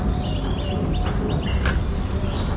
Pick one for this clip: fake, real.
real